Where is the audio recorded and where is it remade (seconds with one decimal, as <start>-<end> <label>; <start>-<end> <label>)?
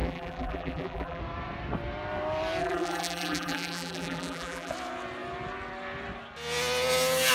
0.0-1.2 remade; 1.2-2.6 recorded; 2.6-4.7 remade; 4.7-7.3 recorded